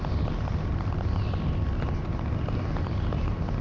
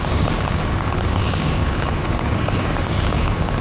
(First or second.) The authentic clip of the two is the first